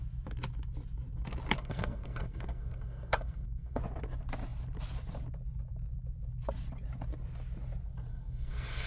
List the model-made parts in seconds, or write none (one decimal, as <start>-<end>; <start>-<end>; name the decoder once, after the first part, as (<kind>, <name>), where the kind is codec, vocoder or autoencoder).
1.6-3.8 (codec, SNAC); 8.1-8.9